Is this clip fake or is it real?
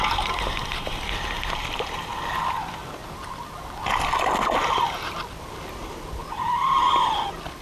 real